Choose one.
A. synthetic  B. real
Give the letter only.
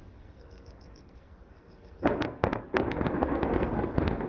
A